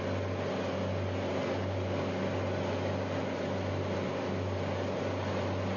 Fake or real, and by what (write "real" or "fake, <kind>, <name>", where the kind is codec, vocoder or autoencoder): real